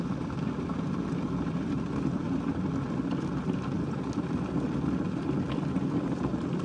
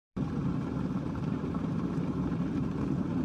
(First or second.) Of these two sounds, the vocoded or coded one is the second